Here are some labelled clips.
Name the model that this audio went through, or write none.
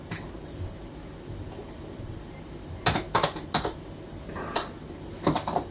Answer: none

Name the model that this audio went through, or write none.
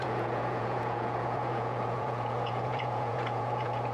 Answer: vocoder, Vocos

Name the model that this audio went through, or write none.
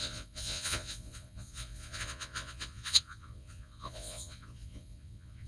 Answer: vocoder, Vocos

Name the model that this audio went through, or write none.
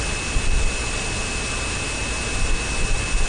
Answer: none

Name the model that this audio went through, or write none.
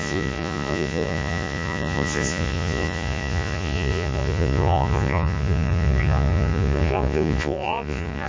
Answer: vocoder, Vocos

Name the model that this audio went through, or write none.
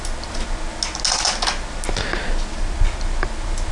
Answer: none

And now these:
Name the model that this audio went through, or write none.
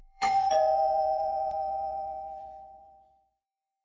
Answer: vocoder, Vocos